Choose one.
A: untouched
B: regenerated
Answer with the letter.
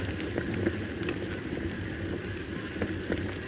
A